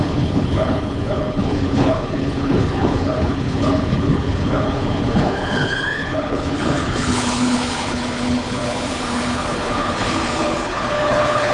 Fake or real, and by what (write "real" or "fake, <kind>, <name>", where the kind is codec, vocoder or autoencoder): fake, codec, HILCodec